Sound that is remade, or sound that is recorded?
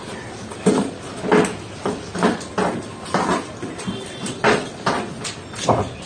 recorded